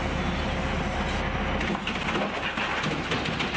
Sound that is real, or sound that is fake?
real